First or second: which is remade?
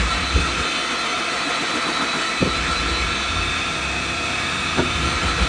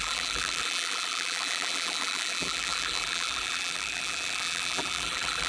second